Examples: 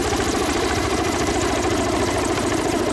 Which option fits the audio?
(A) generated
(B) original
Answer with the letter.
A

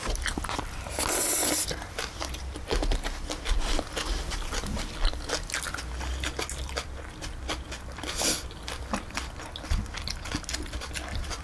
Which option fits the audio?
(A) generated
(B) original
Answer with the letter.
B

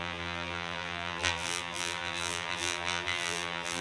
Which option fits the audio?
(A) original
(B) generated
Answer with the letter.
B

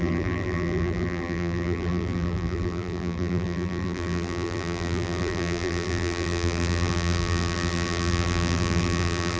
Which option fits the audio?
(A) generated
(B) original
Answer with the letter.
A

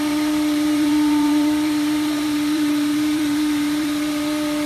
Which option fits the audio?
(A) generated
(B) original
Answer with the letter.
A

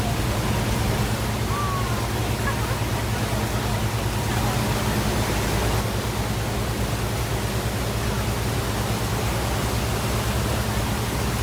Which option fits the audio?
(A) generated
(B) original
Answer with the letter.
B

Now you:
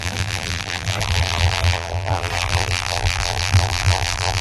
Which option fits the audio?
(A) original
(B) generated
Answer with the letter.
B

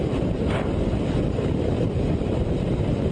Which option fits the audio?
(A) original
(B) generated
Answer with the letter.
B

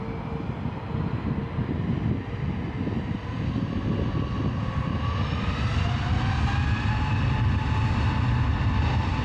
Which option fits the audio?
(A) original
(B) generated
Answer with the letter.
A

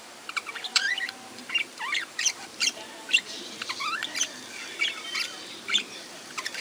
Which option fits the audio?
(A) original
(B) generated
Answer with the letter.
B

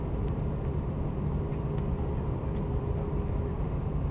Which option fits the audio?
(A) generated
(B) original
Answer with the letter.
B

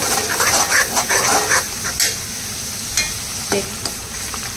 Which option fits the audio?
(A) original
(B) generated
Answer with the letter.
A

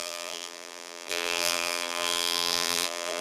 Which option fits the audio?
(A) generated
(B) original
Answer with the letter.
A